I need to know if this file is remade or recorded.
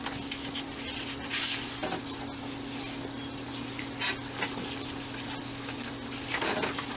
recorded